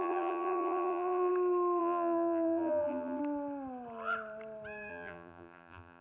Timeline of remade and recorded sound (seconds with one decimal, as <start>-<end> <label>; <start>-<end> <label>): 0.0-1.3 remade; 1.3-1.8 recorded; 1.8-3.2 remade; 3.2-4.9 recorded; 4.9-6.0 remade